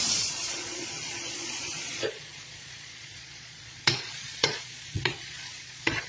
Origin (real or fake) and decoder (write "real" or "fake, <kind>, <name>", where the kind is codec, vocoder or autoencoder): fake, vocoder, Vocos